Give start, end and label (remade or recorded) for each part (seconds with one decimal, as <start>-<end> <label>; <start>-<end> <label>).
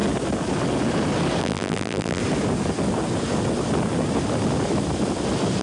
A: 0.0-1.4 recorded; 1.4-2.2 remade; 2.2-5.6 recorded